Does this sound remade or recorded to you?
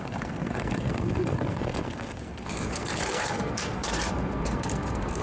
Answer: remade